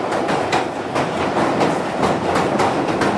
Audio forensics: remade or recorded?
recorded